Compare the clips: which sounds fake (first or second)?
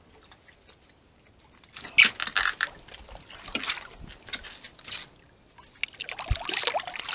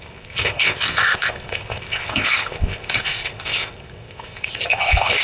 second